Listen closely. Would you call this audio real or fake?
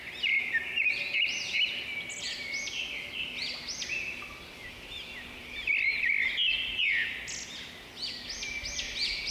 real